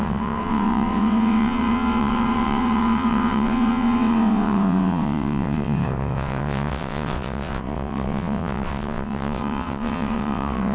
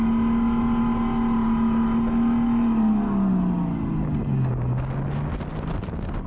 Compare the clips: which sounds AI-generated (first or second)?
first